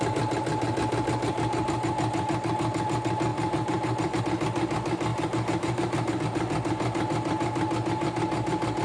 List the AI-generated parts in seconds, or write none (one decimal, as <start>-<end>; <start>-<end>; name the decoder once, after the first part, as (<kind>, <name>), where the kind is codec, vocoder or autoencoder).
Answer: 3.3-4.2 (vocoder, BigVGAN v2); 5.1-6.2